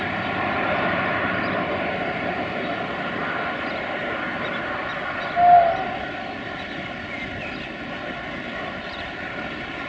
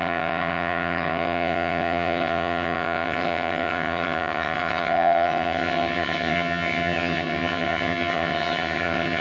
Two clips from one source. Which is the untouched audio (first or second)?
first